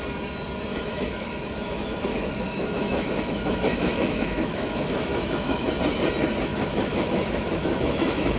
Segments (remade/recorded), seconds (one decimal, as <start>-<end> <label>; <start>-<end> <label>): 0.0-0.7 recorded; 0.7-5.7 remade; 5.7-6.5 recorded; 6.5-8.4 remade